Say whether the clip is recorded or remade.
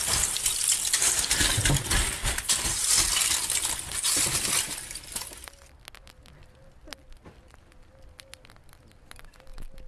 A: recorded